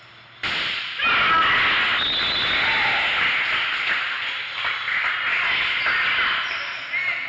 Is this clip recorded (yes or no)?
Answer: yes